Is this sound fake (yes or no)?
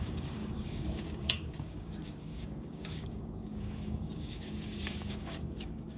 yes